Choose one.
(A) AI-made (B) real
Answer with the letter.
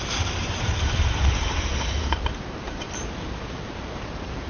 A